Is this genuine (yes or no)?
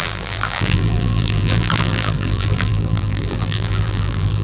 no